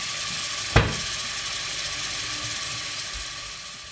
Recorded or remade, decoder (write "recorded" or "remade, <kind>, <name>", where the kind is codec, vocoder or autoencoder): recorded